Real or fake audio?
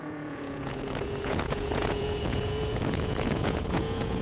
fake